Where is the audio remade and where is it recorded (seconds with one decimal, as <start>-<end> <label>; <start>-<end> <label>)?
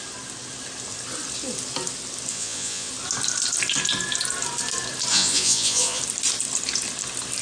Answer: 0.0-2.3 recorded; 2.3-2.9 remade; 2.9-5.1 recorded; 5.1-6.0 remade; 6.0-7.4 recorded